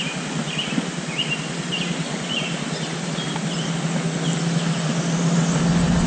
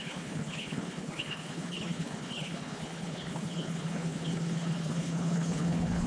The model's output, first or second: second